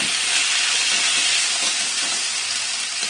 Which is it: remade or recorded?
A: recorded